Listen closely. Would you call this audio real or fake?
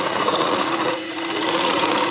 fake